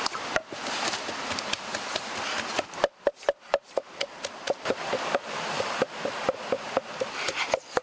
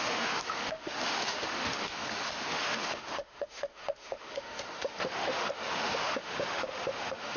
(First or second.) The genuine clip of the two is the first